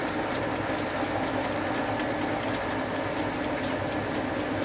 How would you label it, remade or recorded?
recorded